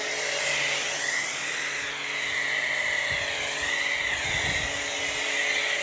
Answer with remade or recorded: recorded